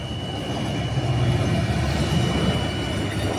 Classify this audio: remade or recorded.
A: recorded